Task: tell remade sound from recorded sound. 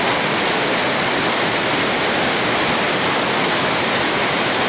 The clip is recorded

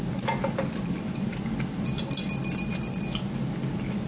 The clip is recorded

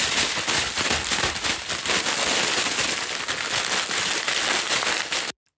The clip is recorded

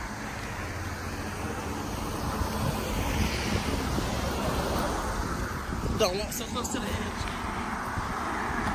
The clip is recorded